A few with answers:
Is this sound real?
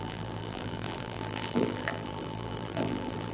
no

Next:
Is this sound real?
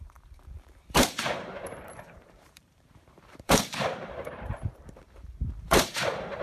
no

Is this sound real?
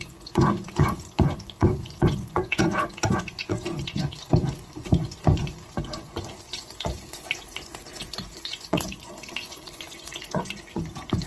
no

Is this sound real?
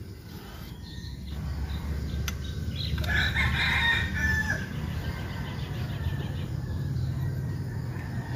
no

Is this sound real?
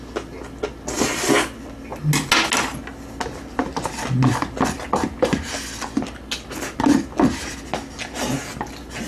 yes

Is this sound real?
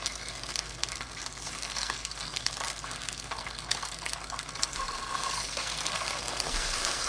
no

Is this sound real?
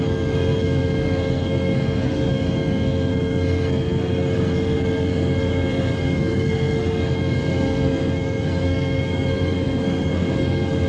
no